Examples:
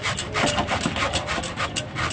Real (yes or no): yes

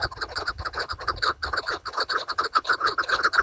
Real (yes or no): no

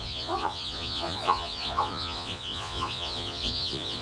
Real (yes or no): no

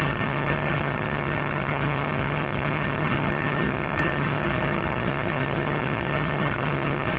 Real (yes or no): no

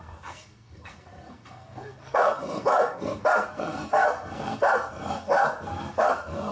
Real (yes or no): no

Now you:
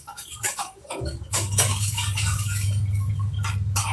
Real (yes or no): no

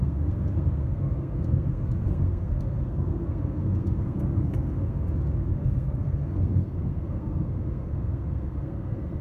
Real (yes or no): no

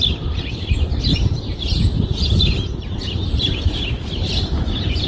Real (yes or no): no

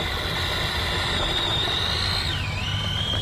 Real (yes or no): yes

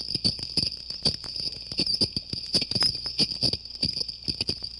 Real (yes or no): yes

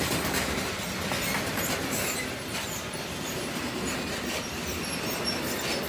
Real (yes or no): yes